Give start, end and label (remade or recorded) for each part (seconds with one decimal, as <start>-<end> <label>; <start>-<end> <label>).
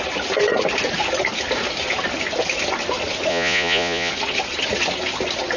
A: 0.0-3.3 recorded; 3.3-4.1 remade; 4.1-5.6 recorded